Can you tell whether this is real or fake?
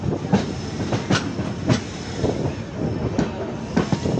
real